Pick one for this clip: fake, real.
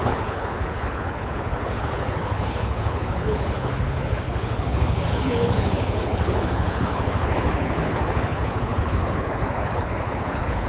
fake